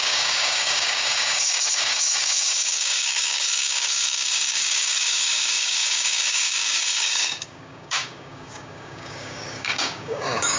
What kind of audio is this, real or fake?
fake